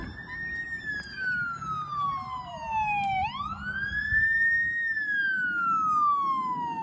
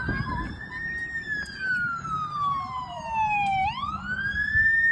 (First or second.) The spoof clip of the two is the second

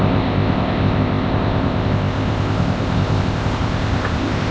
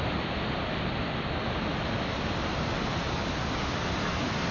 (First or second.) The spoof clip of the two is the first